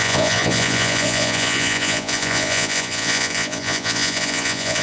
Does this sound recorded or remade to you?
remade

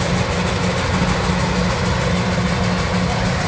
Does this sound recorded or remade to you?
recorded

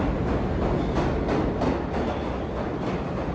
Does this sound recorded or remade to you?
recorded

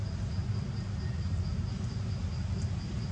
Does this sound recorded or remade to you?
recorded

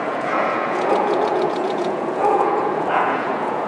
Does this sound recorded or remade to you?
remade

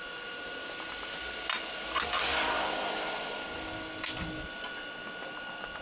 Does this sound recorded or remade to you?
recorded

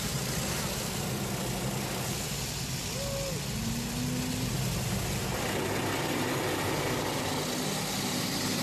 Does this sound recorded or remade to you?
recorded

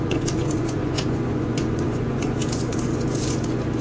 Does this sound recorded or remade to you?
remade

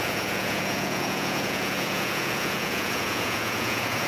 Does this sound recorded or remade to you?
remade